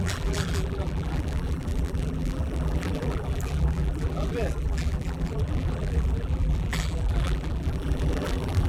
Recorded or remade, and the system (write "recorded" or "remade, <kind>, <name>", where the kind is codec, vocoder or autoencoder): remade, vocoder, BigVGAN v2